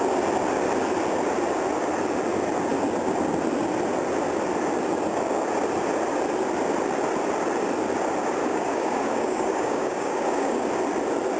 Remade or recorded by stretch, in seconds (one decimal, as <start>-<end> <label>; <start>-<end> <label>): 0.0-8.4 recorded; 8.4-10.7 remade; 10.7-11.4 recorded